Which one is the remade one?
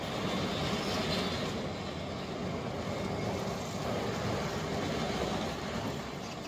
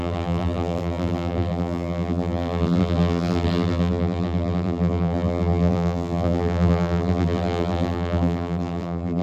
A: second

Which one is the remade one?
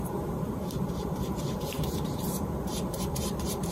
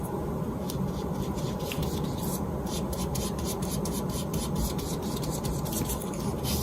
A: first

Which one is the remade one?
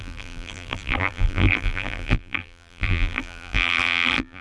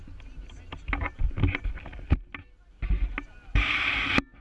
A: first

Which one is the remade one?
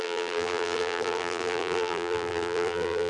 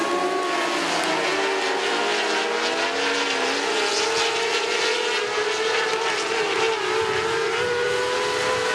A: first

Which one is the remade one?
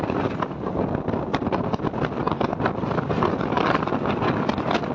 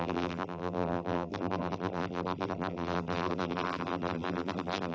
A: second